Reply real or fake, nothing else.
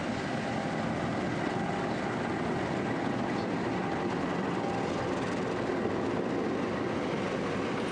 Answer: real